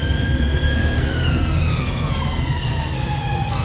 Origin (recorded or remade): remade